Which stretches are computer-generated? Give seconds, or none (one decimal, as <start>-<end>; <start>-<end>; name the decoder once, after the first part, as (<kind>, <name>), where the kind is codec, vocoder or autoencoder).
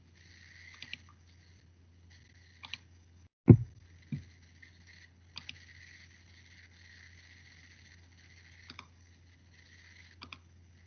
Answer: none